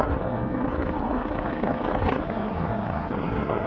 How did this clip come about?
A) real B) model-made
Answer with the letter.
B